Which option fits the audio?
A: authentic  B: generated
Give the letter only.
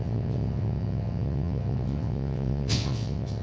B